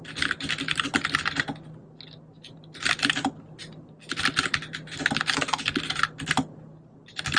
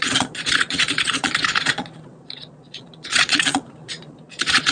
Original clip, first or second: first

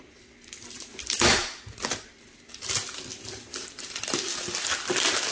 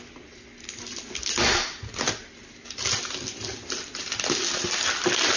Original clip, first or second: second